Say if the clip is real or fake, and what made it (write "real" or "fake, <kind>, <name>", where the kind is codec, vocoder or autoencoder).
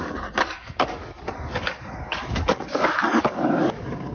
fake, codec, DAC